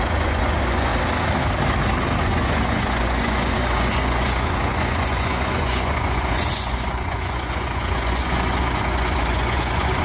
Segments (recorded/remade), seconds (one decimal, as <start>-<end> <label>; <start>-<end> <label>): 0.0-0.9 remade; 0.9-2.2 recorded; 2.2-10.0 remade